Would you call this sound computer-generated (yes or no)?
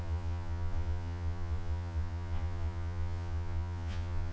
yes